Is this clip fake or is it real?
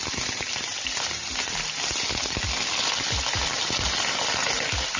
real